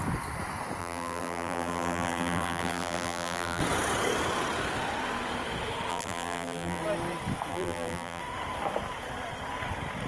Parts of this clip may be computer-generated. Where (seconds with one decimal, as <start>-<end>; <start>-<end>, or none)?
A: 0.8-3.6; 5.9-6.8; 7.5-8.2